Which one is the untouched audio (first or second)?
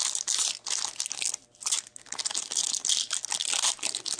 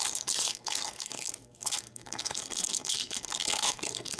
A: first